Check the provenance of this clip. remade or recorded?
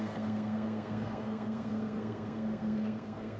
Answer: remade